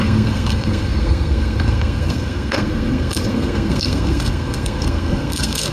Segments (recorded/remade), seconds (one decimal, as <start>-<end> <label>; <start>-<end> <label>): 0.0-5.7 remade